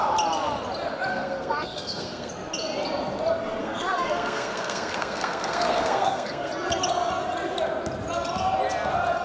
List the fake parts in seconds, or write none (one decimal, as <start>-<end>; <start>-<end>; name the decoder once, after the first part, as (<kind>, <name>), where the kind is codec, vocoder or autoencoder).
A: 1.1-2.3 (codec, SNAC); 3.6-6.5